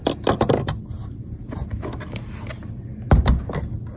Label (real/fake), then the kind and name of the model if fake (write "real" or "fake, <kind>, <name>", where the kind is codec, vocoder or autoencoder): real